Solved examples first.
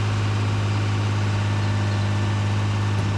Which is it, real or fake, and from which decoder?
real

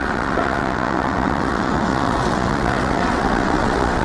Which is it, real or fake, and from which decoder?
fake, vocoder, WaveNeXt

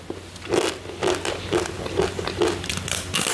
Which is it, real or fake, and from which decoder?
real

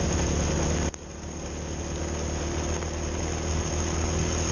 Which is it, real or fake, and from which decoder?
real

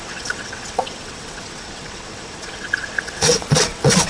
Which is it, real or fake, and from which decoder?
fake, vocoder, WaveNeXt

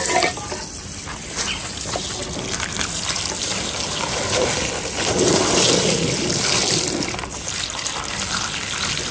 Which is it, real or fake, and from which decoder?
real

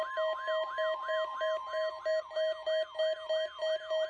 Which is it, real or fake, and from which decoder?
real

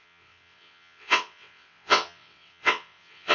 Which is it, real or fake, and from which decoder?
fake, vocoder, WaveNeXt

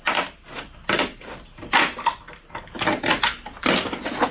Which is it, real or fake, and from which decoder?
real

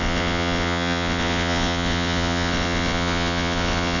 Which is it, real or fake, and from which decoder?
fake, vocoder, WaveNeXt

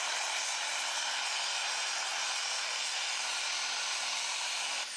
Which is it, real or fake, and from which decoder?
real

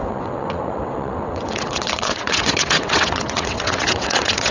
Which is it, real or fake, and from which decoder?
fake, vocoder, WaveNeXt